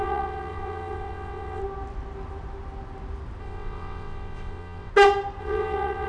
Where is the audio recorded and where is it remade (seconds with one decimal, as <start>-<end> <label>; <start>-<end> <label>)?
0.0-1.6 remade; 1.6-3.4 recorded; 3.4-4.9 remade; 4.9-5.4 recorded; 5.4-6.1 remade